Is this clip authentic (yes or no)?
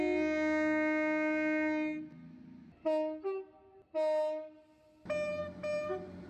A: yes